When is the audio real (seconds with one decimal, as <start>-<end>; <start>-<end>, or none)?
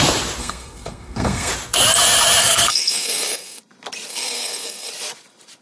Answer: 0.0-0.4; 1.5-2.4; 3.6-4.1; 4.9-5.6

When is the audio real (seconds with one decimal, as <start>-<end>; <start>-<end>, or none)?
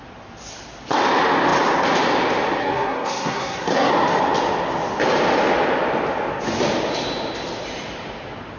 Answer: 0.0-2.6; 3.9-8.6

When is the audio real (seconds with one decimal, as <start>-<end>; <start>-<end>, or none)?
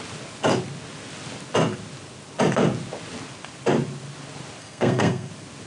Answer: 0.0-4.6; 5.3-5.7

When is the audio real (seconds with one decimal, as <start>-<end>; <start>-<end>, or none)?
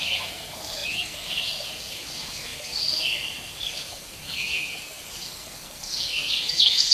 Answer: none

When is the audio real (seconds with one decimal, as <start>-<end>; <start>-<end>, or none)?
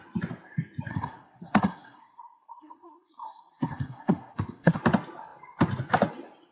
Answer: 0.0-0.9; 4.8-6.5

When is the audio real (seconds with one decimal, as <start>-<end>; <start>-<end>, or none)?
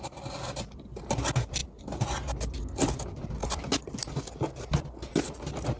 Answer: 0.0-5.8